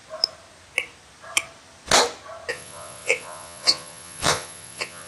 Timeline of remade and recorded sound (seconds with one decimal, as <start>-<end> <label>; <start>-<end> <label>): 0.0-2.5 recorded; 2.5-5.1 remade